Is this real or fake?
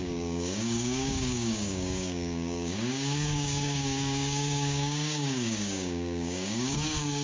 fake